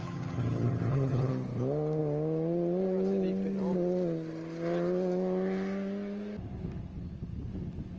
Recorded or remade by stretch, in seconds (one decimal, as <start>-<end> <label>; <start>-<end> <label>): 0.0-1.3 remade; 1.3-8.0 recorded